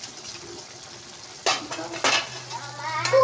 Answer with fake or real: real